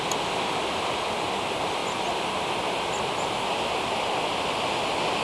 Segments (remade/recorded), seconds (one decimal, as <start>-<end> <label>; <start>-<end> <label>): 0.0-5.2 recorded